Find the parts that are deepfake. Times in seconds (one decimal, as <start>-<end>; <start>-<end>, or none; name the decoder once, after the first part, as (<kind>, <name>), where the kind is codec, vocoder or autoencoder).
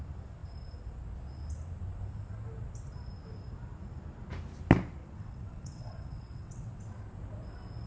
5.0-6.8 (vocoder, WaveNeXt)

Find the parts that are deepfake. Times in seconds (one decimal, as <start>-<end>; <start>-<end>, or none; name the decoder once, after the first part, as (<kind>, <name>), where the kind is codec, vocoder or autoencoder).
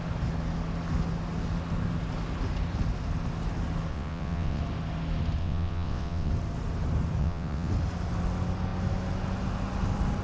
3.9-4.6 (vocoder, WaveNeXt); 5.4-6.3; 7.2-7.7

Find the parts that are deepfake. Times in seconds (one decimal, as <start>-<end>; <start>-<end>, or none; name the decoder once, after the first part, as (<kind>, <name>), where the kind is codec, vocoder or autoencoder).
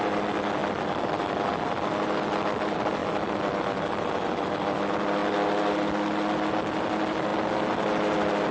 none